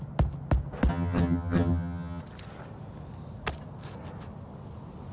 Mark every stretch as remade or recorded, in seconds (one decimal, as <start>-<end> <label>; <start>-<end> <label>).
0.0-0.9 recorded; 0.9-2.2 remade; 2.2-5.1 recorded